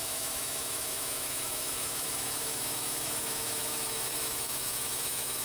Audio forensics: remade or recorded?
remade